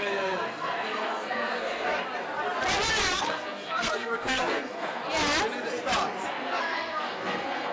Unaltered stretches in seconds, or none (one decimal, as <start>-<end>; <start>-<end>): 1.9-3.1; 5.0-6.3

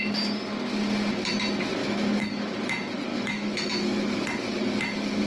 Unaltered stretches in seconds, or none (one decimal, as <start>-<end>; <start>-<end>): 0.0-1.8; 2.5-3.1; 4.2-5.3

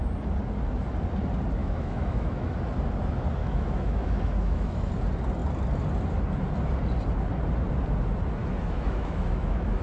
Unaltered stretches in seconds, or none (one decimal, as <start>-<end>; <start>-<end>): 0.0-1.6; 2.5-3.4; 4.9-8.4

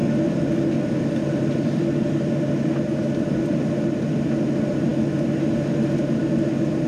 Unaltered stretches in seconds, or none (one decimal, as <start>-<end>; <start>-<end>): 0.0-6.9